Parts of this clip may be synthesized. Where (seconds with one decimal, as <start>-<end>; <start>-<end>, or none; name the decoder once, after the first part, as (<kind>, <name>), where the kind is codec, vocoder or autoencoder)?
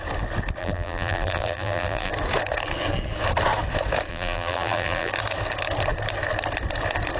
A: 0.6-2.1 (vocoder, BigVGAN v2); 4.1-5.1